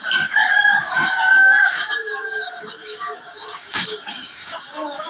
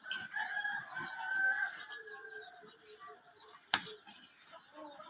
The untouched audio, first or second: second